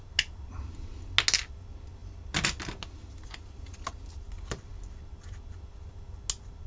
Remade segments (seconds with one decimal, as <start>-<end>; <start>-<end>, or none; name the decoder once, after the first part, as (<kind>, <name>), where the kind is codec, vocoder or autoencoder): none